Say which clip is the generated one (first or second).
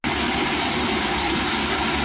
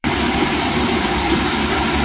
second